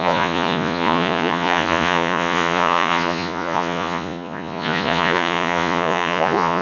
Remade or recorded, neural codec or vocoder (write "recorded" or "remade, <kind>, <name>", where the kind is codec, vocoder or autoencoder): remade, vocoder, Vocos